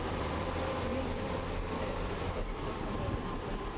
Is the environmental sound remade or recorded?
remade